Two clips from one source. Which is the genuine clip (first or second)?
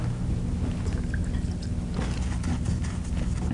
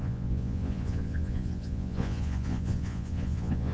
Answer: first